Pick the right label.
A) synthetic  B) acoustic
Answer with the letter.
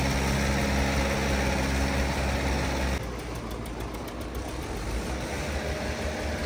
B